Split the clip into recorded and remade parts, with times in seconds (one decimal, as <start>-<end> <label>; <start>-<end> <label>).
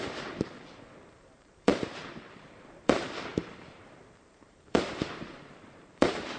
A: 0.0-6.4 remade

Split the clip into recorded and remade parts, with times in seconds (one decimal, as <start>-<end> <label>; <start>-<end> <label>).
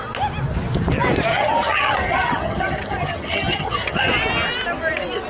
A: 0.0-1.3 recorded; 1.3-4.1 remade; 4.1-5.3 recorded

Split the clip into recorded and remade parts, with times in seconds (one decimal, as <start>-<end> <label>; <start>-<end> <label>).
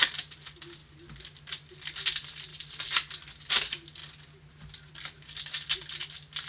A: 0.0-6.5 recorded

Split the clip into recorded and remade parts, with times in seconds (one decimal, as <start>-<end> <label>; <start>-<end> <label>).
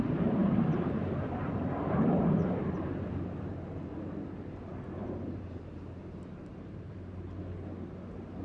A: 0.0-0.4 recorded; 0.4-3.5 remade; 3.5-5.0 recorded; 5.0-6.9 remade; 6.9-8.4 recorded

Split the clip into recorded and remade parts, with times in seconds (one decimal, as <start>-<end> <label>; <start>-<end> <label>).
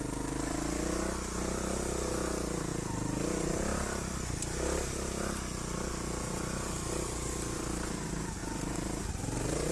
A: 0.0-9.7 recorded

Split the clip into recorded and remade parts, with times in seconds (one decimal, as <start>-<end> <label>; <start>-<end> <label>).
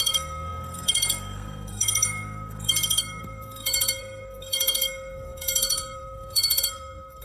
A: 0.0-7.2 remade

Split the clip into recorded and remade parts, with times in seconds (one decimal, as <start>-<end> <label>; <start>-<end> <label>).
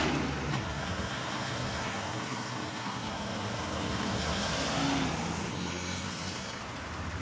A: 0.0-0.5 recorded; 0.5-4.5 remade; 4.5-5.5 recorded; 5.5-6.6 remade; 6.6-7.2 recorded